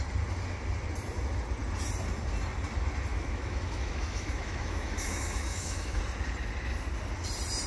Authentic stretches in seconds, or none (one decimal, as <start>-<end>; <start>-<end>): 0.0-3.1; 6.0-7.7